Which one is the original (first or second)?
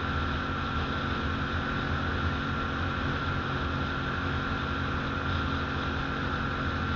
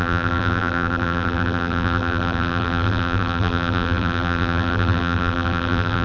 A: first